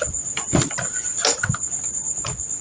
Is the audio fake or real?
real